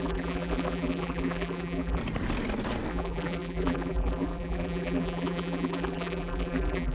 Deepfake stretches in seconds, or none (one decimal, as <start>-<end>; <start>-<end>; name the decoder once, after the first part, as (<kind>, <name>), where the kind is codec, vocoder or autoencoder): 0.0-2.0 (vocoder, BigVGAN v2); 2.9-6.9